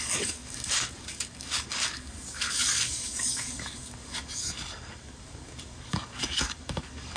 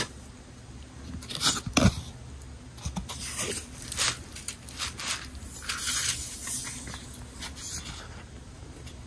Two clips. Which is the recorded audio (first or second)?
second